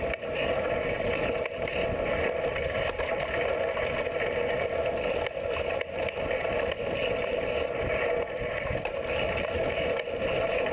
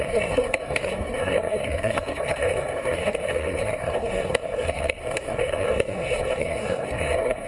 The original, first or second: first